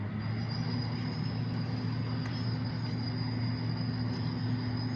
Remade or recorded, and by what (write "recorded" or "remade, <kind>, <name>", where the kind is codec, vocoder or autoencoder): recorded